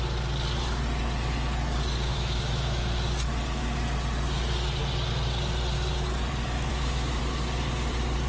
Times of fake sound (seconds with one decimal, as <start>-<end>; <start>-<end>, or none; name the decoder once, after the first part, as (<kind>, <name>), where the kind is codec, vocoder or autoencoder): 2.1-2.9 (autoencoder, DAC-VAE); 6.7-7.2